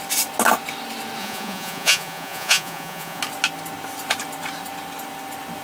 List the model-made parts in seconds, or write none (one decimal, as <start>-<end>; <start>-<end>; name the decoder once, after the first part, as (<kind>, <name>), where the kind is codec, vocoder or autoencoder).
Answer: 1.2-3.2 (vocoder, Vocos)